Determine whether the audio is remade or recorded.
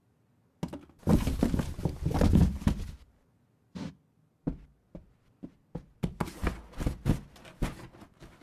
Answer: recorded